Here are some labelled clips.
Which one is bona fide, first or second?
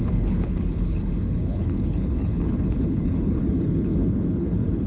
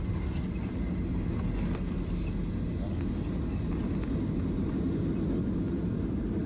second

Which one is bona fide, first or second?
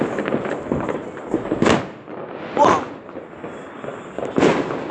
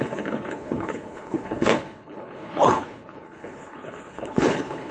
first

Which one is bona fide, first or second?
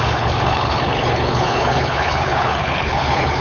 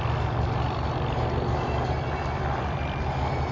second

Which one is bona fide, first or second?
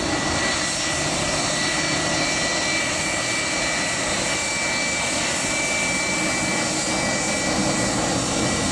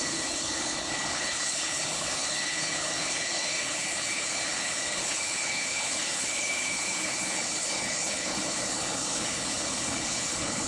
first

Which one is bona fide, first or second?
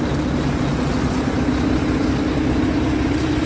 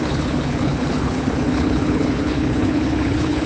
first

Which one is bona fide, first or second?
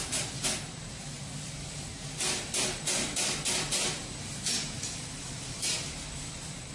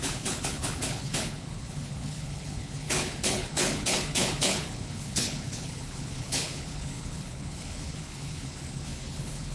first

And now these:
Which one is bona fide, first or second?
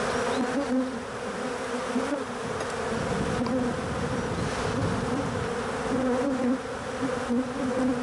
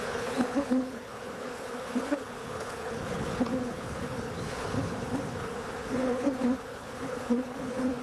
first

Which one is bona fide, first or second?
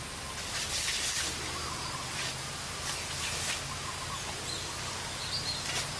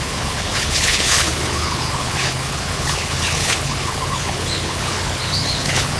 first